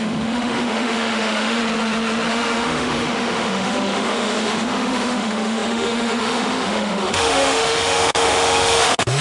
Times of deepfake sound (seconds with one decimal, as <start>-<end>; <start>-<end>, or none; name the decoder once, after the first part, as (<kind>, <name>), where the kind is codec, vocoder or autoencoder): 0.0-1.6 (autoencoder, DAC-VAE); 2.3-9.2